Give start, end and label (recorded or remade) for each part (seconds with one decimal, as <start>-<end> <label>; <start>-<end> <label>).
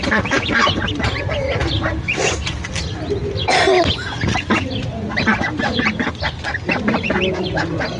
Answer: 0.0-8.0 recorded